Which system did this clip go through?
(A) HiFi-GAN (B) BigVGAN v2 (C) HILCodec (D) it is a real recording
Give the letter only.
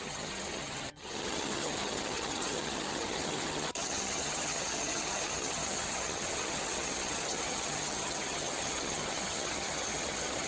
A